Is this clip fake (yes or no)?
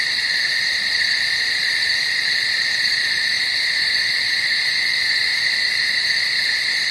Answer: no